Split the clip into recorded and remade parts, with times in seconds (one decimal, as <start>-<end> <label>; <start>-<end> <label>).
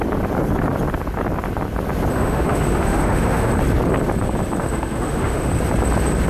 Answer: 0.0-2.1 recorded; 2.1-3.5 remade; 3.5-4.6 recorded; 4.6-5.5 remade; 5.5-6.3 recorded